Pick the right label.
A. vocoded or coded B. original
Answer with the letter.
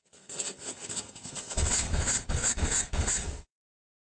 A